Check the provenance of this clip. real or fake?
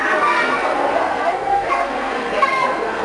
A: fake